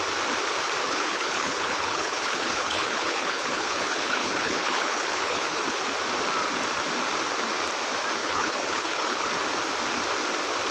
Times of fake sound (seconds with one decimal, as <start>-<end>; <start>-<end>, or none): 0.8-5.6; 8.2-9.3

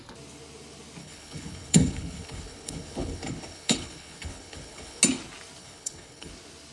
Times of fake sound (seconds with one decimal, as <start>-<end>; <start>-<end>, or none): 1.0-5.0; 5.6-6.3

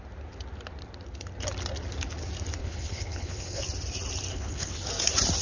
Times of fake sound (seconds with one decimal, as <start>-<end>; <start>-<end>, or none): 2.6-3.6; 4.3-4.9

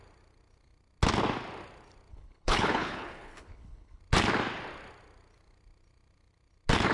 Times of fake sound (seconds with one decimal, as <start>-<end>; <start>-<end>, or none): 2.1-4.0

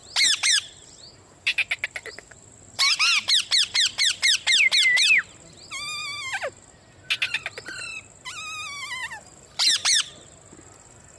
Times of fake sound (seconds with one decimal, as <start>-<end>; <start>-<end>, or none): none